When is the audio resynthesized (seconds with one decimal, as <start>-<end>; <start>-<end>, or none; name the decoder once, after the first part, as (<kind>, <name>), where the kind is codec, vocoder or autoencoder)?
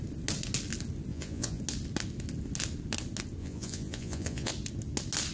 1.1-1.6 (vocoder, Vocos); 3.4-4.5